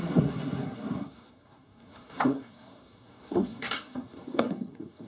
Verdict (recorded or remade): remade